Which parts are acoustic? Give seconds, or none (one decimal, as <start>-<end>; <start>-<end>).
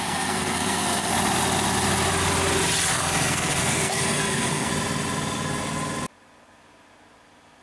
1.1-2.9; 4.7-7.6